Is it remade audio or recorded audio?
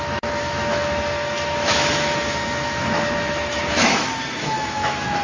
remade